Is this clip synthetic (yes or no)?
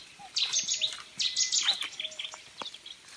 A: no